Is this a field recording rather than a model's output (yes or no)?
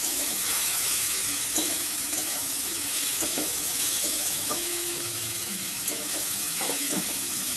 no